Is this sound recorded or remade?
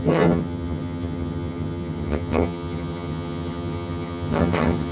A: remade